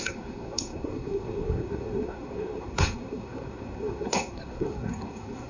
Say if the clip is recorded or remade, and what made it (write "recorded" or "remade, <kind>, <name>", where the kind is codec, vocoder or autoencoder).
remade, codec, SNAC